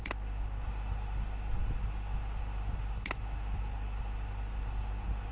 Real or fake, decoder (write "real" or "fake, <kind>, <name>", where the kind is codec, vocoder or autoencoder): real